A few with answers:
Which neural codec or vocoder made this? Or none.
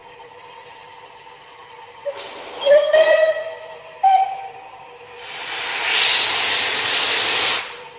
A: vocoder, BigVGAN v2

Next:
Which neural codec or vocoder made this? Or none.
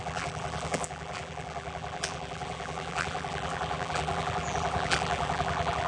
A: vocoder, BigVGAN v2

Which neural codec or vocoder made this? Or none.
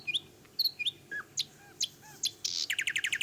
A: none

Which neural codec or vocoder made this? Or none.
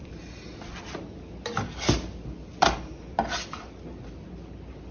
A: none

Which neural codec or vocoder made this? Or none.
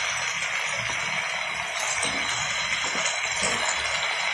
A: none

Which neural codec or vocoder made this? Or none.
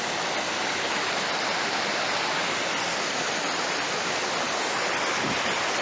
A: none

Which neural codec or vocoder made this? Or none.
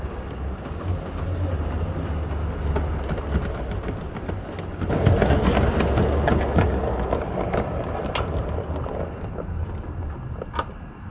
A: none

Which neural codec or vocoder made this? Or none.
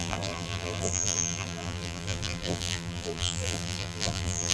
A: vocoder, BigVGAN v2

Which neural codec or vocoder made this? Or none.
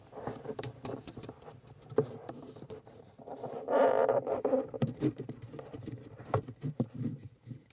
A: vocoder, BigVGAN v2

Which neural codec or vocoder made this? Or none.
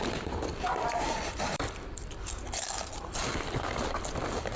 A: vocoder, BigVGAN v2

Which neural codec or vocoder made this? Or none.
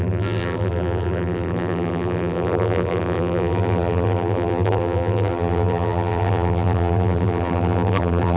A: vocoder, BigVGAN v2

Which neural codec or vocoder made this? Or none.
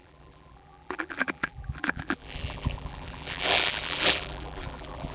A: vocoder, BigVGAN v2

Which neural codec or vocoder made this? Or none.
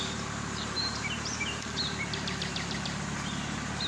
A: vocoder, BigVGAN v2